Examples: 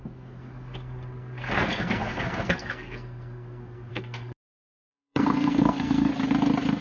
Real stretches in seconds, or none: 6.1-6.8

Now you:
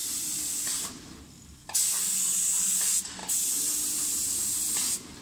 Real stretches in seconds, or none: 0.0-5.2

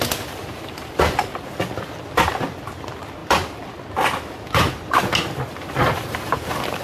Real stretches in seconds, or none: 0.0-6.8

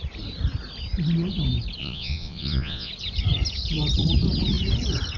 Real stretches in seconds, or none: 0.0-1.8; 2.9-5.2

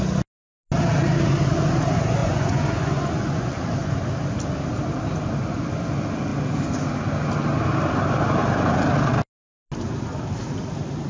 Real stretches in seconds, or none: 0.0-2.2; 3.6-11.1

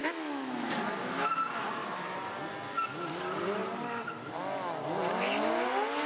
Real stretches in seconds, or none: 0.7-1.8; 2.3-6.1

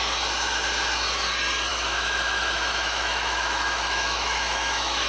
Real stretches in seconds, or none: 0.0-1.7